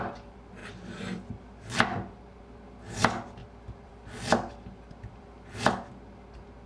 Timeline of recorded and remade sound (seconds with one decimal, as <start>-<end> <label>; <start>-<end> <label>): 0.0-0.6 recorded; 0.6-2.4 remade; 2.4-3.4 recorded; 3.4-5.9 remade; 5.9-6.7 recorded